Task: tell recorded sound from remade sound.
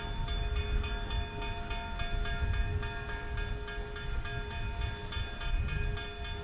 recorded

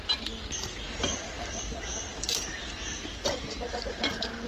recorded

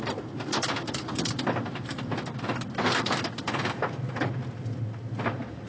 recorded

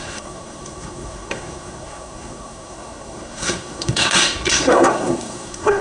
remade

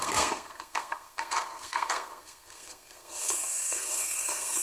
remade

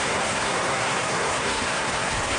remade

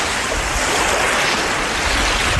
recorded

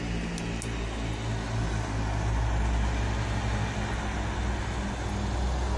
recorded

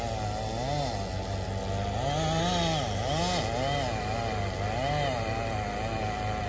recorded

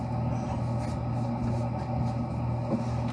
recorded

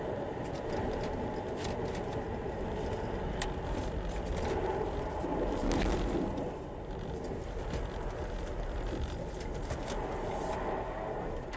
recorded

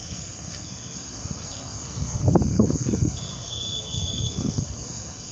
remade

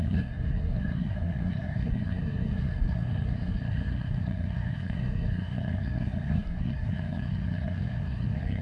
remade